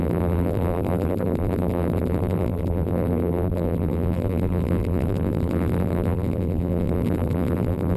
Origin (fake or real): fake